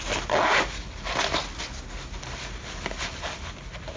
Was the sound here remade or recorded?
recorded